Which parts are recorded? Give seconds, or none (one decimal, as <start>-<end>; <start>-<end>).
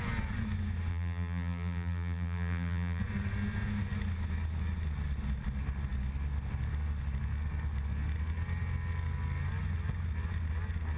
0.0-0.9; 3.0-11.0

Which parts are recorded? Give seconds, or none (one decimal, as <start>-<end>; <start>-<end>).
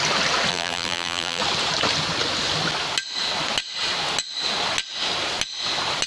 0.0-0.5; 1.4-6.1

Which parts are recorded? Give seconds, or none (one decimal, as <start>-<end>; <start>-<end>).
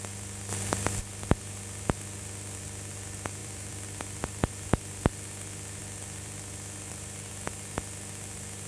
0.0-0.5; 1.0-3.4; 4.5-5.8; 7.3-8.7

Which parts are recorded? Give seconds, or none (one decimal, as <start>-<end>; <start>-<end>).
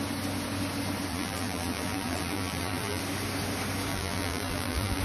0.0-1.1; 3.0-3.9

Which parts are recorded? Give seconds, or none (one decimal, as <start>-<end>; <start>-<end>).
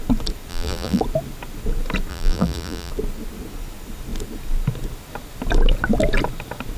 0.0-0.5; 1.0-2.1; 2.9-6.8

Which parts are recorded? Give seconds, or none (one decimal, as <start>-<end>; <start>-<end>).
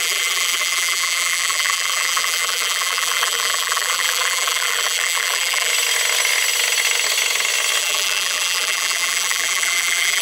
5.7-7.8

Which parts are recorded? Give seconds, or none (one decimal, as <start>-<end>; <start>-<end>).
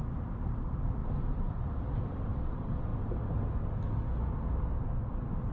0.0-1.0; 2.1-5.5